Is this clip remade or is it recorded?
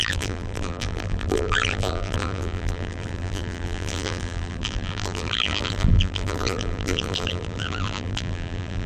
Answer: remade